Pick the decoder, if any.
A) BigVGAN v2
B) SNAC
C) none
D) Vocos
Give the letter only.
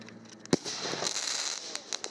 C